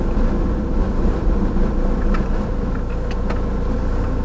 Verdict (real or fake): real